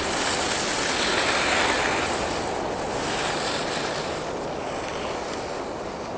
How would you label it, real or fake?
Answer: real